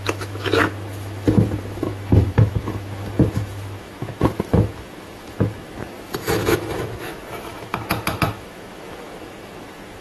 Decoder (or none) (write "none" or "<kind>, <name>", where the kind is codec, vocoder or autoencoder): autoencoder, DAC-VAE